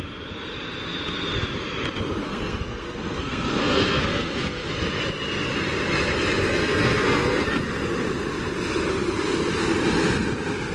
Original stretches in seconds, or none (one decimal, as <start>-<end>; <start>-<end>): 0.0-2.2; 4.7-6.5; 7.6-10.7